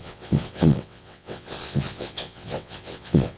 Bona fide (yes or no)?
no